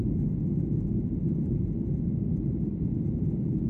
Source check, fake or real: real